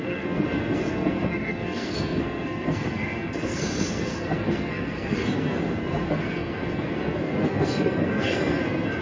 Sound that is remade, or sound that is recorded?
remade